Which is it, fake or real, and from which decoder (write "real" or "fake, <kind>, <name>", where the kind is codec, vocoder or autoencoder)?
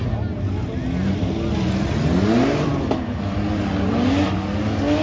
real